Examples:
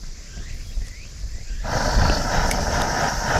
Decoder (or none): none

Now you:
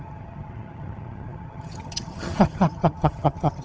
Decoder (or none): vocoder, HiFi-GAN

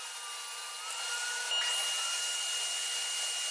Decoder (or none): none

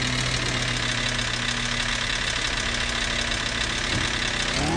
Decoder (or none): none